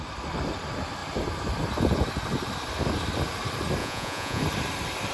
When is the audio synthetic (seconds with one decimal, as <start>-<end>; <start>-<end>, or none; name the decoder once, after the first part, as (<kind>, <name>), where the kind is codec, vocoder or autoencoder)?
3.8-4.4 (vocoder, Vocos)